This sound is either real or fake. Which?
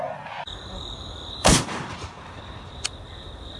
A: fake